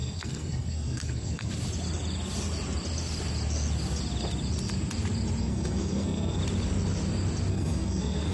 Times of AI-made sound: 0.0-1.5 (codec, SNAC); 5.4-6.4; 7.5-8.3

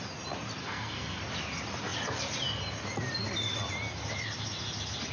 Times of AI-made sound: 0.6-1.2 (codec, SNAC)

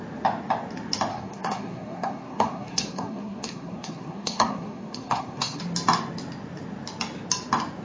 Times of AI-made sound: 1.1-5.6 (codec, SNAC)